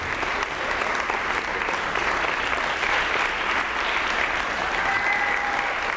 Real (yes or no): yes